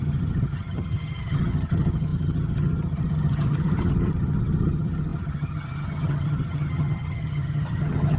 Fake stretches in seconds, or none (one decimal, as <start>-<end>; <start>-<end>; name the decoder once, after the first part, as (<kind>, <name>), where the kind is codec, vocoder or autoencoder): 0.0-8.2 (vocoder, HiFi-GAN)